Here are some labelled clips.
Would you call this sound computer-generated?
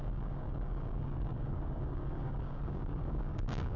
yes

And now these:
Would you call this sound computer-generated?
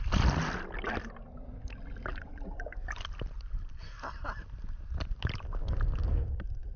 no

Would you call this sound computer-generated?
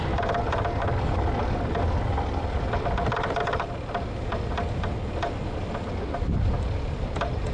no